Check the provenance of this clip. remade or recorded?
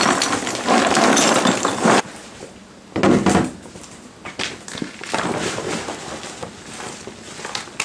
recorded